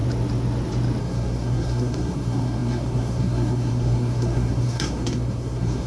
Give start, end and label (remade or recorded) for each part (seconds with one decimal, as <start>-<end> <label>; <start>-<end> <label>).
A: 0.0-1.0 recorded; 1.0-5.9 remade